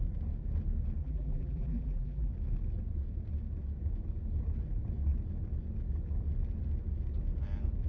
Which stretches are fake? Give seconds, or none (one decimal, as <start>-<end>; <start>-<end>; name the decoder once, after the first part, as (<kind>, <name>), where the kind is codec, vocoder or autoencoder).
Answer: 1.0-2.3 (vocoder, BigVGAN v2)